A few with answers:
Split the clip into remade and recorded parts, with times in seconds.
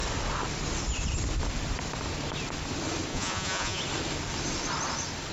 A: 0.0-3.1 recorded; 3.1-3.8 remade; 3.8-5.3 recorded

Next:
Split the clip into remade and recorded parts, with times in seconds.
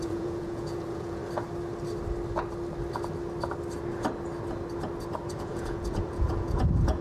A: 0.0-1.2 remade; 1.2-5.3 recorded; 5.3-7.0 remade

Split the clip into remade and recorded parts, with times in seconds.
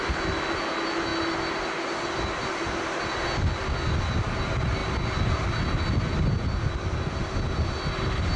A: 0.0-8.4 recorded